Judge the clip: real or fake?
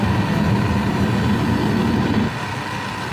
real